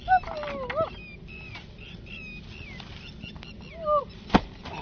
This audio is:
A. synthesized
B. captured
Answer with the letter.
B